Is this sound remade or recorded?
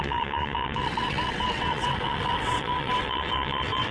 remade